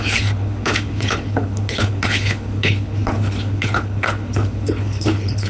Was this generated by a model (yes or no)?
yes